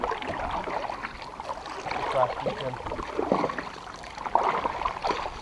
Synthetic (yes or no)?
no